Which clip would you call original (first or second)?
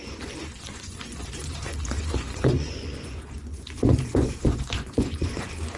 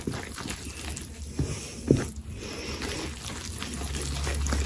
second